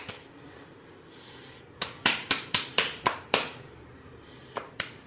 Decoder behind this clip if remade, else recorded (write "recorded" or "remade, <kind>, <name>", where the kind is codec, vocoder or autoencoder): remade, vocoder, BigVGAN v2